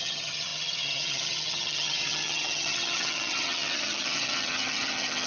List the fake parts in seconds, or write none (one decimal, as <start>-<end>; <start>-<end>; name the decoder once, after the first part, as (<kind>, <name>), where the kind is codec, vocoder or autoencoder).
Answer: 0.0-5.3 (vocoder, HiFi-GAN)